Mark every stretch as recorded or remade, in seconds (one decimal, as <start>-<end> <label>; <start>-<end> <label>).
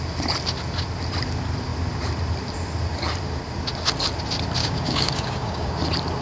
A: 0.0-4.6 recorded; 4.6-5.7 remade; 5.7-6.2 recorded